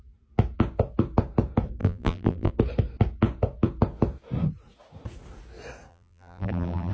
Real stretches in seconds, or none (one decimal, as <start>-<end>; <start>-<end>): 0.0-1.8; 2.5-5.9